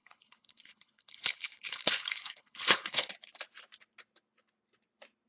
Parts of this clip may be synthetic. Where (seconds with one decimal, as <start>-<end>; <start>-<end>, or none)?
0.0-3.1